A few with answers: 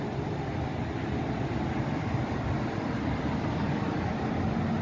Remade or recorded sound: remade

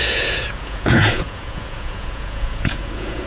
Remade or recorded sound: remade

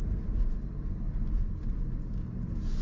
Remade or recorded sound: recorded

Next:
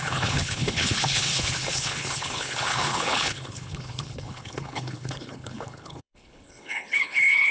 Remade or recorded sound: remade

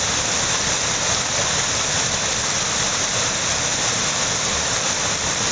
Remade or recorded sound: recorded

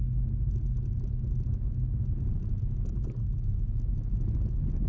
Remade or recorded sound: recorded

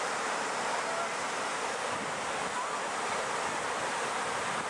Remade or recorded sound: recorded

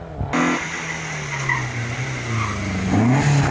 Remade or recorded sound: recorded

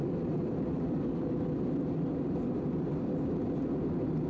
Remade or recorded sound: recorded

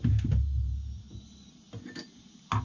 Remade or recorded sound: recorded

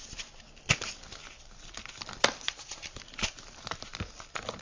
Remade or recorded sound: remade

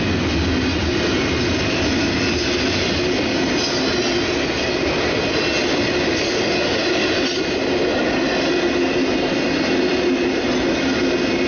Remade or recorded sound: recorded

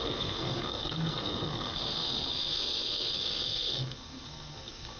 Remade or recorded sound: remade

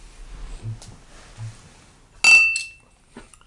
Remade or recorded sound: recorded